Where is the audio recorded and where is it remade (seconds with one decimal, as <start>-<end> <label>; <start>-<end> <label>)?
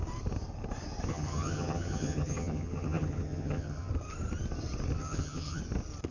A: 0.0-1.1 recorded; 1.1-3.9 remade; 3.9-5.0 recorded; 5.0-5.6 remade; 5.6-6.1 recorded